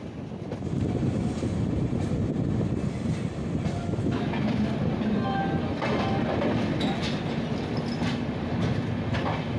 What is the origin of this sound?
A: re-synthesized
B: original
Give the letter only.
B